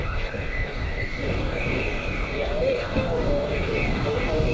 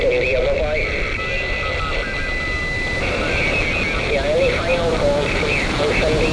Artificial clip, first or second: first